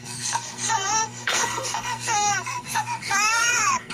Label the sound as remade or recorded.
remade